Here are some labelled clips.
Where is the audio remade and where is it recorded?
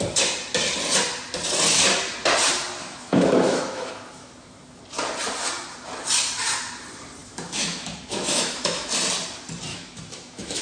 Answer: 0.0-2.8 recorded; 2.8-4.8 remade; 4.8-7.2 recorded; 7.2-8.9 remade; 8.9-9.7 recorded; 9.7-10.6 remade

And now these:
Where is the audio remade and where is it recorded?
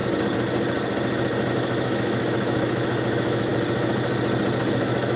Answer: 0.0-1.5 recorded; 1.5-3.5 remade; 3.5-4.7 recorded; 4.7-5.2 remade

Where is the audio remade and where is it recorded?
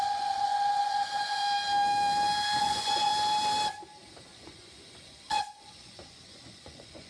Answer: 0.0-1.4 remade; 1.4-2.6 recorded; 2.6-3.1 remade; 3.1-4.4 recorded; 4.4-7.1 remade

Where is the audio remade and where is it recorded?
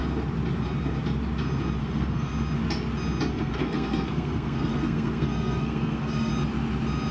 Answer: 0.0-1.8 recorded; 1.8-2.3 remade; 2.3-3.3 recorded; 3.3-6.3 remade; 6.3-7.1 recorded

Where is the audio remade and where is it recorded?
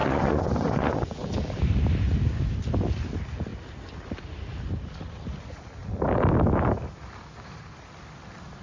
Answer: 0.0-1.3 remade; 1.3-8.6 recorded